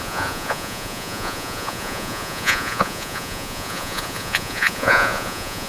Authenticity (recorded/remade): remade